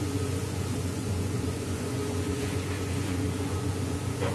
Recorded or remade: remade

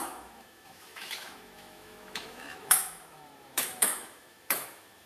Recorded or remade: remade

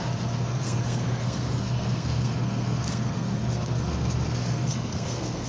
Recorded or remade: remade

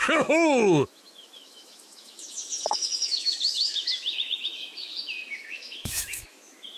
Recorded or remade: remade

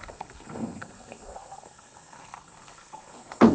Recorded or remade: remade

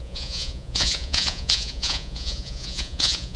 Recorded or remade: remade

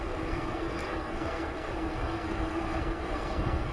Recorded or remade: remade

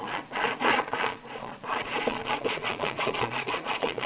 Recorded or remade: remade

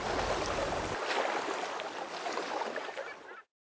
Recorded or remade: recorded